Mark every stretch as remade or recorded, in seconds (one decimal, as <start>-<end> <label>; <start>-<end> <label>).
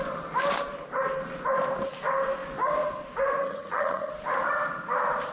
0.0-3.4 recorded; 3.4-4.1 remade; 4.1-5.3 recorded